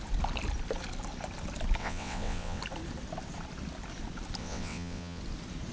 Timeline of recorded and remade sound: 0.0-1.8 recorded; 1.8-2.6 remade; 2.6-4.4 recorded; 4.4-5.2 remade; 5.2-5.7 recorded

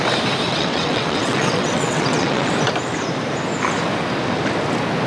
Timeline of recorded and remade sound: 0.0-0.5 recorded; 0.5-2.5 remade; 2.5-5.1 recorded

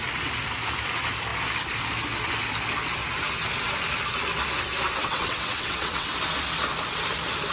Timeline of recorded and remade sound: 0.0-5.0 recorded; 5.0-6.1 remade; 6.1-7.5 recorded

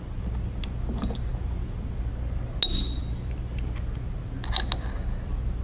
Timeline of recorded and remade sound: 0.0-5.6 recorded

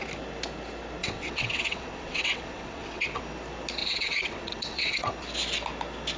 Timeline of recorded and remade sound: 0.0-1.0 recorded; 1.0-3.2 remade; 3.2-3.8 recorded; 3.8-5.1 remade; 5.1-6.2 recorded

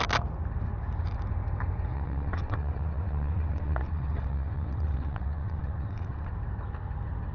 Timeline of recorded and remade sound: 0.0-1.9 recorded; 1.9-6.3 remade; 6.3-7.3 recorded